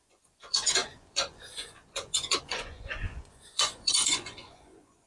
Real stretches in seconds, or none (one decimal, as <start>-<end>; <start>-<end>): none